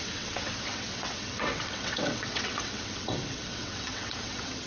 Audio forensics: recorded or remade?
remade